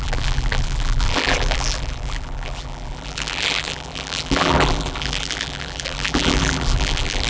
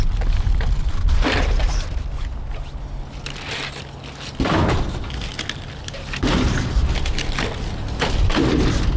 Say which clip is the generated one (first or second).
first